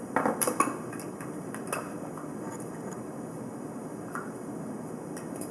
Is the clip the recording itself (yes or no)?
yes